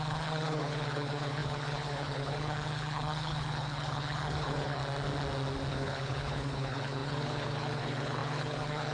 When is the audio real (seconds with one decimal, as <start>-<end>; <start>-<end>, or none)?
4.8-5.7